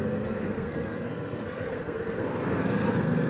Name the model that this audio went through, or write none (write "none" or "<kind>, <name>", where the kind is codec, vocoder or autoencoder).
codec, SNAC